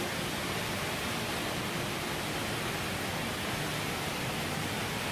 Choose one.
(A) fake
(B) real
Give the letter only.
B